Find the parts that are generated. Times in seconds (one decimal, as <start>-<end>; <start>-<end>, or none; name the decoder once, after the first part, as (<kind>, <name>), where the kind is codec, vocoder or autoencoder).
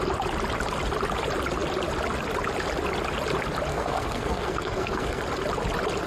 3.7-5.2 (codec, SNAC)